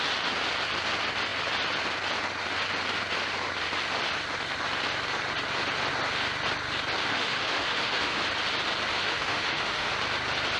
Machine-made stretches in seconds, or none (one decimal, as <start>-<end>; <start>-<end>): 7.1-8.2; 8.9-9.9

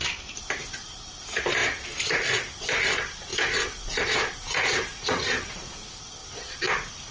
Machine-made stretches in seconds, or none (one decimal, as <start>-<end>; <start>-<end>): none